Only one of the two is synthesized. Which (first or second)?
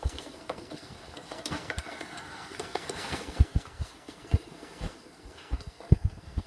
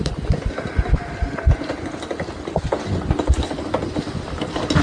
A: first